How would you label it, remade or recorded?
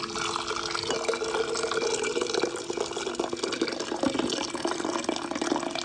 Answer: recorded